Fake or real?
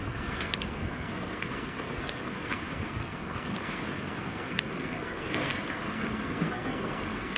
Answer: fake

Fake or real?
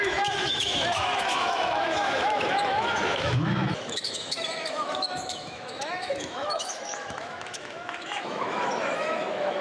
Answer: fake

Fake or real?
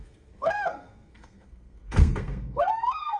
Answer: fake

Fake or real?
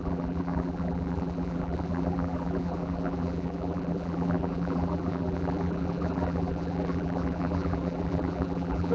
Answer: fake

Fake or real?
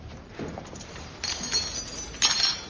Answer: real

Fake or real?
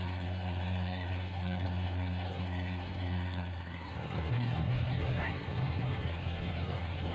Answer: fake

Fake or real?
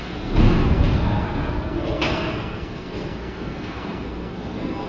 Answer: fake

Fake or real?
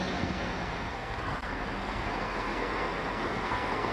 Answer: fake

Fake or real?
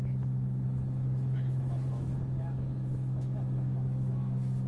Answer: fake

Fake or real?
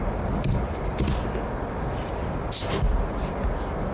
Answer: real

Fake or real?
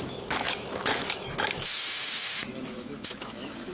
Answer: fake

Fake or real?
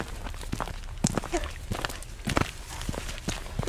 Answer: real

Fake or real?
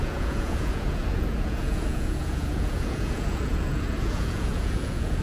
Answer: fake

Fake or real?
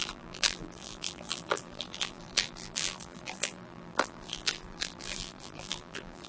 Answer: fake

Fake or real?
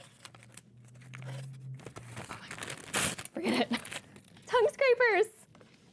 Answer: real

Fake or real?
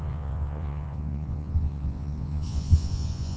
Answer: fake